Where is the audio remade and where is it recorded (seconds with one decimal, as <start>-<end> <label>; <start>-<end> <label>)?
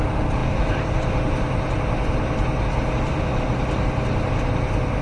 0.0-5.0 recorded